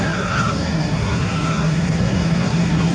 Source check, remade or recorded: remade